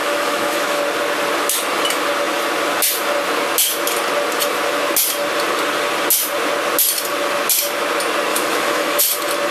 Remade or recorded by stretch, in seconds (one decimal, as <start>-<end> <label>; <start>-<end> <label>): 0.0-0.8 remade; 0.8-8.3 recorded; 8.3-9.0 remade; 9.0-9.5 recorded

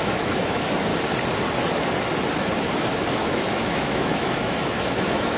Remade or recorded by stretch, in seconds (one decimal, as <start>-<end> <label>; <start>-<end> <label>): 0.0-0.9 remade; 0.9-3.1 recorded; 3.1-5.4 remade